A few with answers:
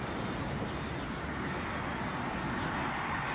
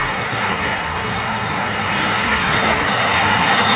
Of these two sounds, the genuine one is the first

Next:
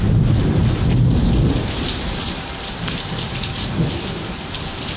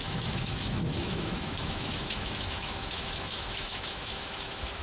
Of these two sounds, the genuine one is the first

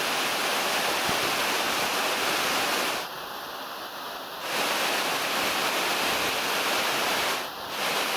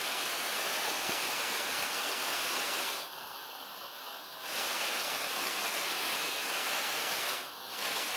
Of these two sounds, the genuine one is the first